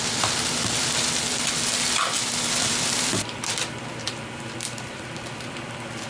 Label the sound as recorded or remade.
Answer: remade